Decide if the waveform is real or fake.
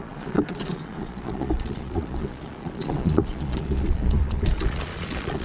fake